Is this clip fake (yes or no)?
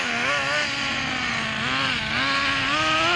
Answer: no